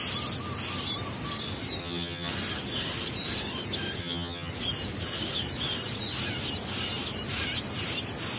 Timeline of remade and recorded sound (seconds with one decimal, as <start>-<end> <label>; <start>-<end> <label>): 0.0-1.8 recorded; 1.8-2.3 remade; 2.3-4.0 recorded; 4.0-4.5 remade; 4.5-8.4 recorded